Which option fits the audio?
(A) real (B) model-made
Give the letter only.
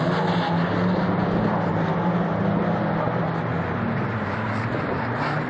A